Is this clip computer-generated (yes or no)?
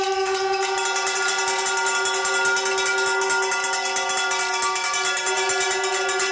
no